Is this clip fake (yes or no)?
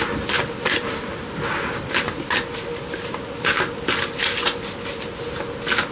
no